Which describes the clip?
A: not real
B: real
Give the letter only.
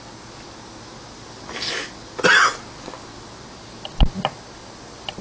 B